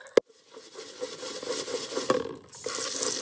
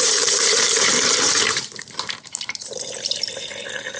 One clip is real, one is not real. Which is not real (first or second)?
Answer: second